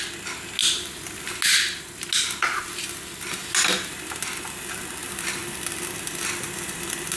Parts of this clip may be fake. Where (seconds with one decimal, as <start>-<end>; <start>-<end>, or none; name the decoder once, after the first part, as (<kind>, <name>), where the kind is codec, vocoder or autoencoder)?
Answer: none